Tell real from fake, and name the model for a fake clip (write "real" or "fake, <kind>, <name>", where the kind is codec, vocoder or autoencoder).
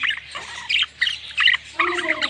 real